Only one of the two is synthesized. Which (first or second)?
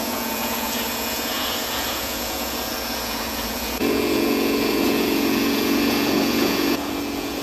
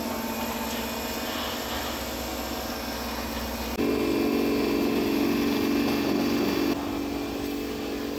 first